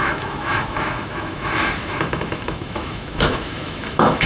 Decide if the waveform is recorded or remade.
remade